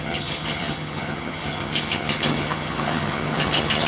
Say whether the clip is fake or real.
fake